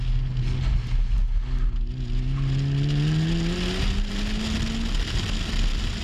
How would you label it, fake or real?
real